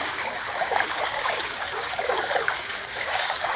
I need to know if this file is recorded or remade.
remade